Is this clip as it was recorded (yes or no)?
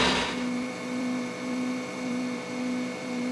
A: no